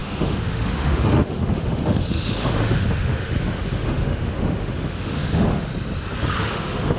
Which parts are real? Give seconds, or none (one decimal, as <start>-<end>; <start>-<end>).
5.7-6.4